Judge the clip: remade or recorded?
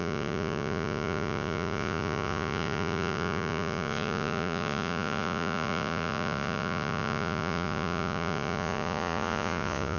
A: remade